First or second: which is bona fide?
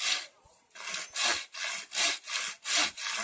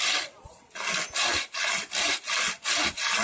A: first